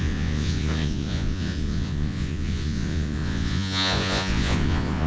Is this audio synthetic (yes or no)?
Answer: yes